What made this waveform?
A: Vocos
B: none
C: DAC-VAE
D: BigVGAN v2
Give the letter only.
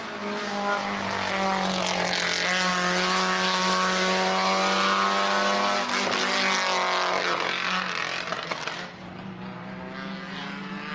B